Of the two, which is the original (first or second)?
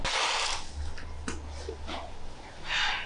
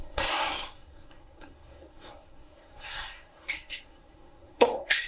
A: first